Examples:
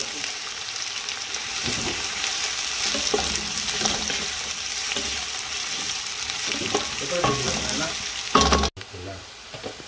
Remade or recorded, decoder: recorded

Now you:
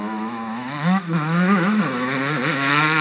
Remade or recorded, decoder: remade, autoencoder, DAC-VAE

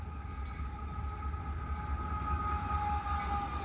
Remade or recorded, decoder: recorded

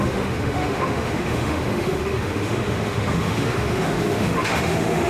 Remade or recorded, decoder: remade, autoencoder, DAC-VAE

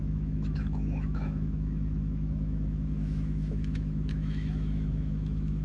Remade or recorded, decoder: remade, autoencoder, DAC-VAE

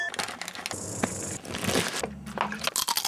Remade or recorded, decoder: recorded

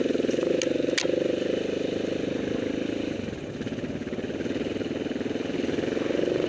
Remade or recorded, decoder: recorded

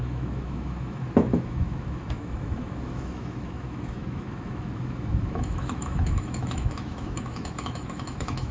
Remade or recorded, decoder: remade, autoencoder, DAC-VAE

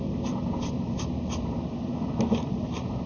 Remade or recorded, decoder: recorded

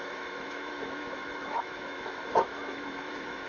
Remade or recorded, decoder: remade, autoencoder, DAC-VAE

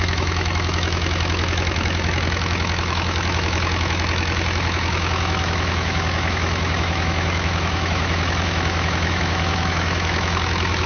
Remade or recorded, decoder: remade, autoencoder, DAC-VAE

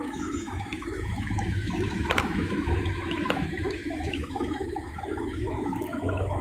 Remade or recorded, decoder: remade, autoencoder, DAC-VAE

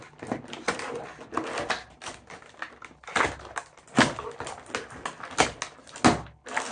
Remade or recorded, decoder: recorded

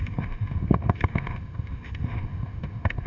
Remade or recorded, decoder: remade, autoencoder, DAC-VAE